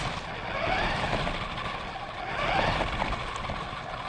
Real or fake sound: real